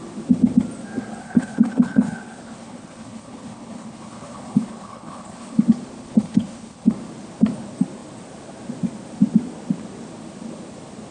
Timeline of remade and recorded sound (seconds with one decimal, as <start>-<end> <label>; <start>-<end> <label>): 0.0-1.2 recorded; 1.2-5.6 remade; 5.6-6.0 recorded; 6.0-6.9 remade; 6.9-11.1 recorded